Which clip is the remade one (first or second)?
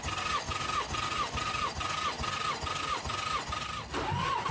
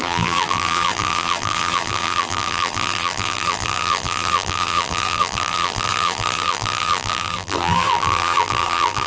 second